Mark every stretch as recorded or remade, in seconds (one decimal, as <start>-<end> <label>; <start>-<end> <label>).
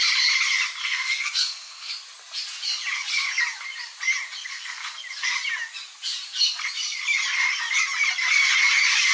0.0-0.8 recorded; 0.8-1.9 remade; 1.9-4.4 recorded; 4.4-5.0 remade; 5.0-9.1 recorded